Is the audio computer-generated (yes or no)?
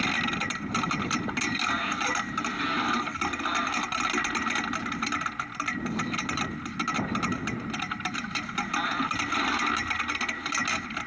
no